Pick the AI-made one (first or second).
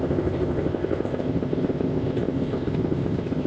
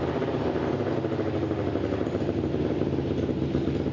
first